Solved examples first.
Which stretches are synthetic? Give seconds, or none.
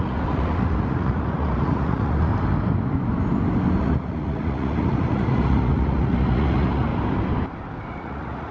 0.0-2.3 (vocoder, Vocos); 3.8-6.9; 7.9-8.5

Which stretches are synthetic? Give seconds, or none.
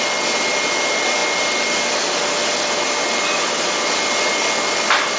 none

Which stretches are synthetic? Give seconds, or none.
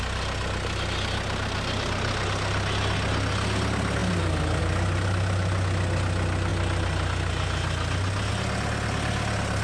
none